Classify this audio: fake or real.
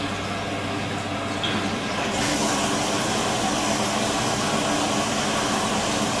real